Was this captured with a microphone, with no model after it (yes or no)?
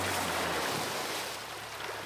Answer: yes